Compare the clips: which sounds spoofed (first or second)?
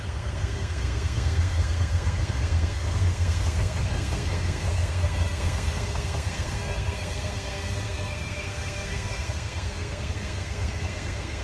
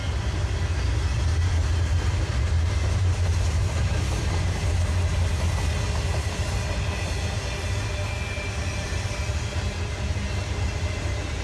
first